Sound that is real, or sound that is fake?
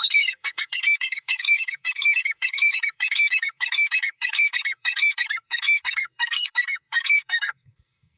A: fake